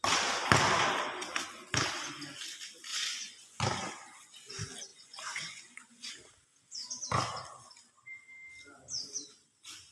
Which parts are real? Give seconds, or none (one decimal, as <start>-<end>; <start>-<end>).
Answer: 0.0-2.9; 3.6-4.9; 6.1-9.9